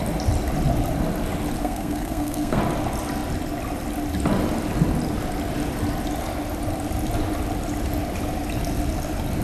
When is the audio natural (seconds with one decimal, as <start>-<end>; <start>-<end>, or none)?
0.0-1.6; 2.6-9.4